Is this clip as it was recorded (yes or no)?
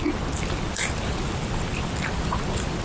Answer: yes